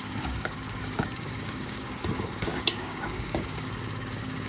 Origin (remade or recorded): remade